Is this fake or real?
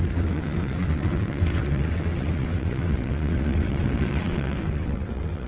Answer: fake